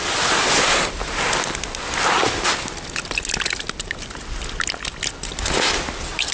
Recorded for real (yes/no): yes